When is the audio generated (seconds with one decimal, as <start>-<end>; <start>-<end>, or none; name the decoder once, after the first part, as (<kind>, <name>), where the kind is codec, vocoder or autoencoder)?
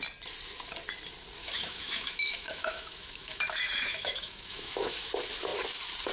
1.4-5.1 (autoencoder, DAC-VAE)